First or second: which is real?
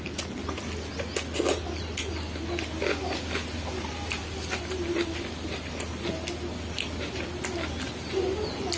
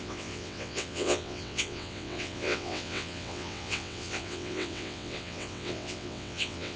first